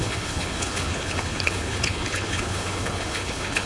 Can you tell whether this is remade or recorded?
remade